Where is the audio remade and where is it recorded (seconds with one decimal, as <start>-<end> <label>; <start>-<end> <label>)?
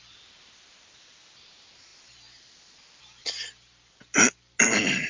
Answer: 0.0-5.1 recorded